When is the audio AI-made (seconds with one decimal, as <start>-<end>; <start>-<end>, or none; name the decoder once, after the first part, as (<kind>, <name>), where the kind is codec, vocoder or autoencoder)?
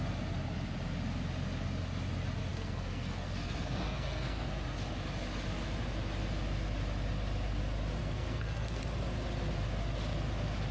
2.5-4.5 (codec, SNAC); 8.0-8.8